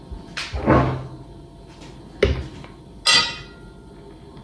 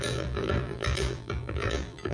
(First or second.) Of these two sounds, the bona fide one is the first